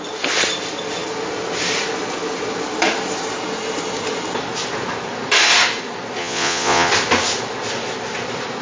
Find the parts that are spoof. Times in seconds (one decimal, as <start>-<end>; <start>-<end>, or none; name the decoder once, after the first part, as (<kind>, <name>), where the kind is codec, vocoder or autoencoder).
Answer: 6.2-6.9 (vocoder, Vocos)

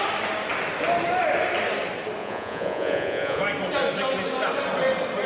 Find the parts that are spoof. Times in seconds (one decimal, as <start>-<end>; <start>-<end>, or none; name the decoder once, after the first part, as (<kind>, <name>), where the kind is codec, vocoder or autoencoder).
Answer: 2.2-3.4 (vocoder, Vocos)

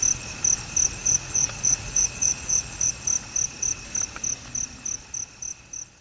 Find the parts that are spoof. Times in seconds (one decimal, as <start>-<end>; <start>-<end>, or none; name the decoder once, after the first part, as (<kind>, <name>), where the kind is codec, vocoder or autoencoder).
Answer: 1.0-2.9 (vocoder, Vocos)

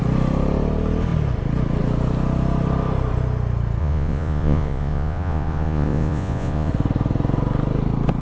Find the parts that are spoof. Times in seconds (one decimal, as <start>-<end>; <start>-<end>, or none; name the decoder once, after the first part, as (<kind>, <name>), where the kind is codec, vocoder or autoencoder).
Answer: 3.8-6.7 (vocoder, Vocos)

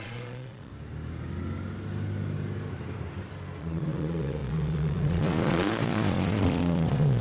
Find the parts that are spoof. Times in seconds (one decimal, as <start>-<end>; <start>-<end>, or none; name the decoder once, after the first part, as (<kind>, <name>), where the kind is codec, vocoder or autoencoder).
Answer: 0.0-0.7 (vocoder, Vocos); 3.6-7.2

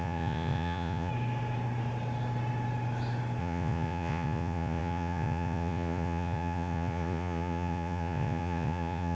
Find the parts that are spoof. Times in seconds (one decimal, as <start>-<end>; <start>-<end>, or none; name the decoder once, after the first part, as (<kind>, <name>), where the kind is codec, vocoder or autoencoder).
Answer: 0.0-1.1 (vocoder, Vocos); 3.4-9.1

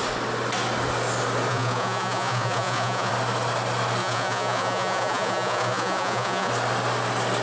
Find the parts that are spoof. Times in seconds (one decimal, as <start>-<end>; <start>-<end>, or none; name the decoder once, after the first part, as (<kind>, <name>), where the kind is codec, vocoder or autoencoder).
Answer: 1.5-3.1 (vocoder, Vocos); 4.0-6.5